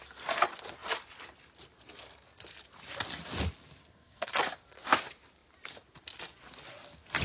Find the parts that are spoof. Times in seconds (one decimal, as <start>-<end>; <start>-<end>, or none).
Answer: 3.8-4.4